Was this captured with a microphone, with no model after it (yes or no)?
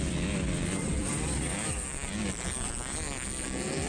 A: no